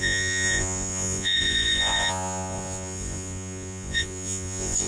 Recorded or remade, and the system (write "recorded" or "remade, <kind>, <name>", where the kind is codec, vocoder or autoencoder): remade, vocoder, Vocos